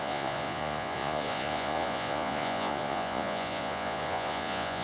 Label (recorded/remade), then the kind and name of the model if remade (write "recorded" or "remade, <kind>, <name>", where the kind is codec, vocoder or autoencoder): remade, vocoder, Vocos